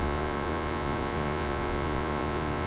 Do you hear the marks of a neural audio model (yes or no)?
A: yes